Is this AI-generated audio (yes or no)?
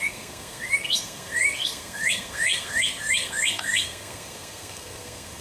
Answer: yes